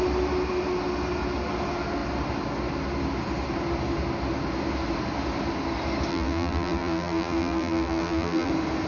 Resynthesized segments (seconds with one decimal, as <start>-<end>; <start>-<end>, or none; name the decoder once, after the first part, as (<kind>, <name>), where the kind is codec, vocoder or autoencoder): 6.1-8.5 (vocoder, BigVGAN v2)